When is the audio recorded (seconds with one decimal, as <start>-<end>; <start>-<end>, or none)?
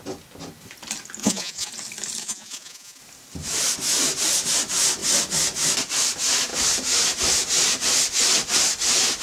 0.0-1.2; 1.7-2.2; 3.0-9.2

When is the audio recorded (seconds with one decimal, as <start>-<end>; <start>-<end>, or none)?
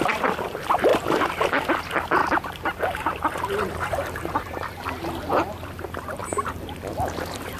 0.0-2.2; 4.9-6.2; 6.9-7.6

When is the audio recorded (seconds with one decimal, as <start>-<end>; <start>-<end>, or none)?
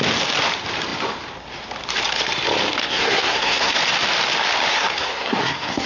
0.0-2.8; 3.8-4.7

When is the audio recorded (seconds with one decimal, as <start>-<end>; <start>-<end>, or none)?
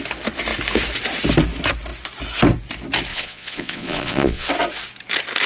0.0-3.1; 4.5-5.5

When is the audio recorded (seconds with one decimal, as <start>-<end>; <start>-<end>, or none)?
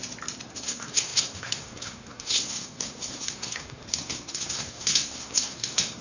0.0-0.5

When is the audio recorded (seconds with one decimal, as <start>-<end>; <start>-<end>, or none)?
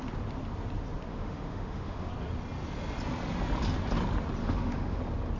0.0-1.1; 2.1-4.4; 5.0-5.4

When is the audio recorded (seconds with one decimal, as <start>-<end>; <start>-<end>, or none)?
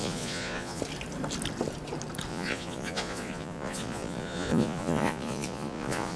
0.8-2.3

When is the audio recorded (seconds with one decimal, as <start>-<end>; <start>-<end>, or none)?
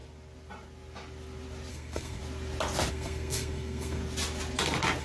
0.0-1.7; 2.2-2.9; 4.0-5.0